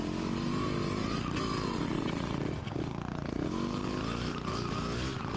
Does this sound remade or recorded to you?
recorded